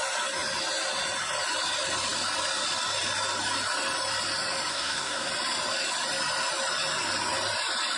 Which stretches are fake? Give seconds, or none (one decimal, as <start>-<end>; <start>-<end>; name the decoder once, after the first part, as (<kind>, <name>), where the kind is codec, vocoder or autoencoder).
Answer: 4.7-5.3 (codec, SNAC)